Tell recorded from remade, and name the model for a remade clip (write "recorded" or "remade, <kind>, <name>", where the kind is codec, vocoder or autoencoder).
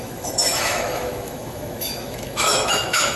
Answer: remade, autoencoder, DAC-VAE